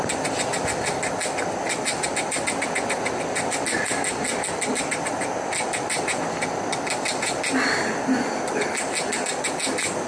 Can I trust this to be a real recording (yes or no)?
yes